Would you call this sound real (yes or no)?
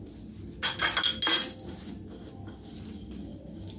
yes